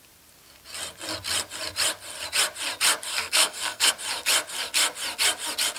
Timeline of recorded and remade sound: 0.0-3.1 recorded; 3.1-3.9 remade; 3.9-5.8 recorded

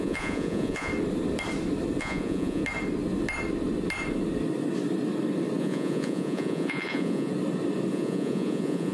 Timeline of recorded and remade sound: 0.0-0.9 remade; 0.9-2.0 recorded; 2.0-2.6 remade; 2.6-5.6 recorded; 5.6-7.3 remade; 7.3-7.9 recorded; 7.9-8.9 remade

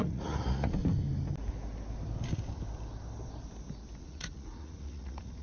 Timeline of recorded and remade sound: 0.0-0.8 remade; 0.8-4.0 recorded; 4.0-5.4 remade

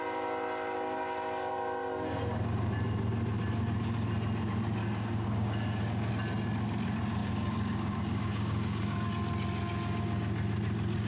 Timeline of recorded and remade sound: 0.0-4.8 recorded; 4.8-6.1 remade; 6.1-7.2 recorded; 7.2-9.1 remade; 9.1-11.1 recorded

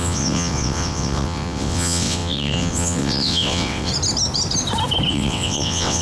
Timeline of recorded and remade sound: 0.0-3.9 remade; 3.9-5.1 recorded; 5.1-6.0 remade

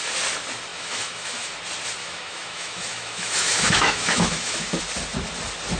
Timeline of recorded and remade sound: 0.0-0.7 recorded; 0.7-1.5 remade; 1.5-2.0 recorded; 2.0-4.8 remade; 4.8-5.8 recorded

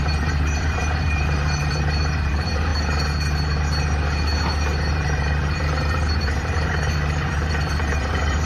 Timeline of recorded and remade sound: 0.0-2.7 remade; 2.7-4.9 recorded; 4.9-8.5 remade